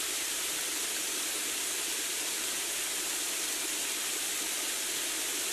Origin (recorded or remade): remade